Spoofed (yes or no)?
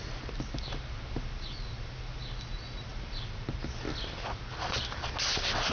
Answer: no